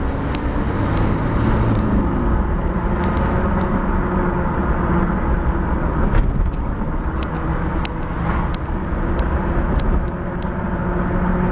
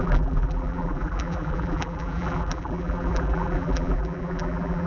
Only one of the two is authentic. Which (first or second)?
first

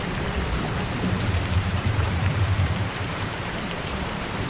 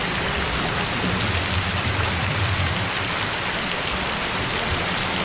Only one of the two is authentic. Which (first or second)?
second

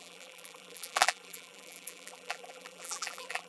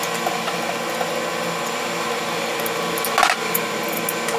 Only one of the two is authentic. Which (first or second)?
second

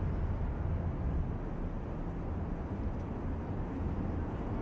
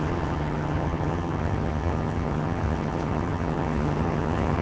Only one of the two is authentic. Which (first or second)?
first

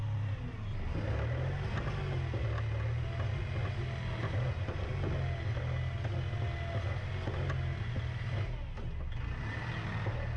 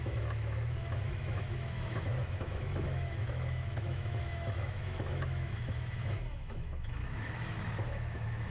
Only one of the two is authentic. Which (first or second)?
first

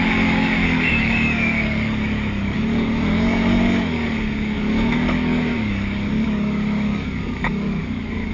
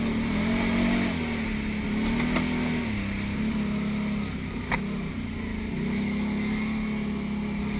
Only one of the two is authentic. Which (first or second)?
second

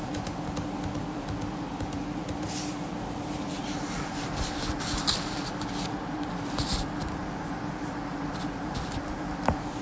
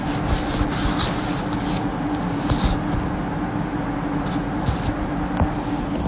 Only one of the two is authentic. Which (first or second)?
second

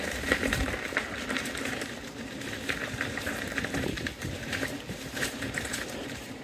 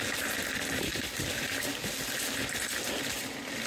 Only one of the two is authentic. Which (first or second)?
second